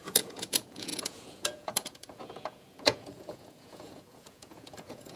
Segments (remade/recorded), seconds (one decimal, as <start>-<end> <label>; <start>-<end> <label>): 0.0-5.2 remade